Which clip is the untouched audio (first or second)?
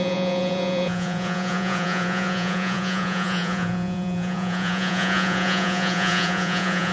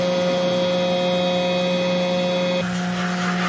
second